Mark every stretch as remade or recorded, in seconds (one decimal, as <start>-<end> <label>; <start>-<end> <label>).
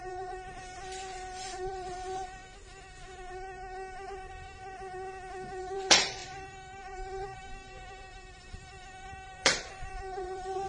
0.0-2.4 remade; 2.4-5.6 recorded; 5.6-10.7 remade